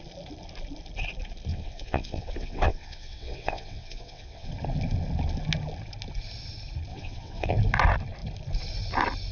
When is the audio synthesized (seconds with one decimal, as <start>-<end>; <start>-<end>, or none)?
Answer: 1.5-4.5; 6.9-7.5